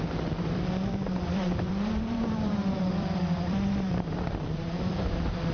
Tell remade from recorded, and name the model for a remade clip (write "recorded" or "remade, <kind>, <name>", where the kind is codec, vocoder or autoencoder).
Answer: remade, vocoder, BigVGAN v2